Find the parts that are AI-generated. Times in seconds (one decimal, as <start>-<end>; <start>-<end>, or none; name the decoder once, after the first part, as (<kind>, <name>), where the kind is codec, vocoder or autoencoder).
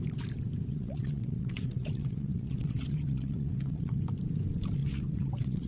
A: 0.7-4.0 (vocoder, WaveNeXt); 4.8-5.7